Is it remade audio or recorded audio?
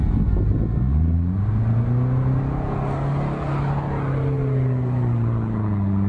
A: recorded